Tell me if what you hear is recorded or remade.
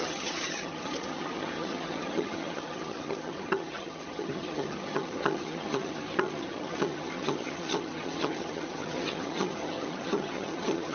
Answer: remade